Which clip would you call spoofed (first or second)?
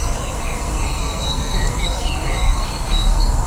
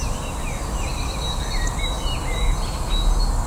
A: first